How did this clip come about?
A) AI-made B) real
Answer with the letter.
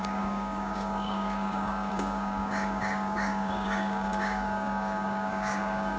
A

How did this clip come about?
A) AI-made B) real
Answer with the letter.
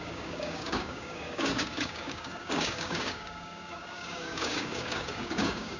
A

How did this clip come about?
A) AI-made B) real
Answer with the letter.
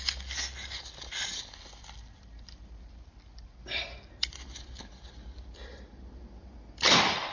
B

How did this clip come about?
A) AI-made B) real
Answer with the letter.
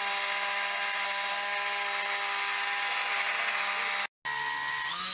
B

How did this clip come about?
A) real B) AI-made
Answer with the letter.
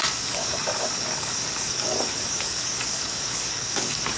B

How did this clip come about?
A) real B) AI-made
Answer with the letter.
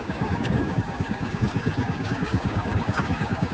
B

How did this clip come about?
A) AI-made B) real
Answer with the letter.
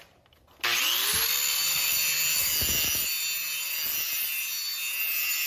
B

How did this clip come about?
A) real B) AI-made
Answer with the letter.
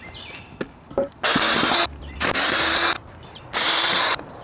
A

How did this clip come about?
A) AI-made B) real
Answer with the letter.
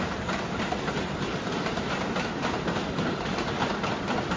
B